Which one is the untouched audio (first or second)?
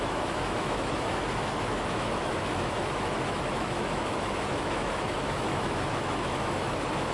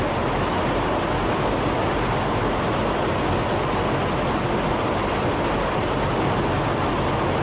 second